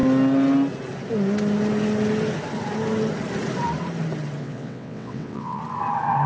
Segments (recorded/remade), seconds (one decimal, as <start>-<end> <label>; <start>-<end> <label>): 0.0-4.4 recorded; 4.4-5.6 remade; 5.6-6.3 recorded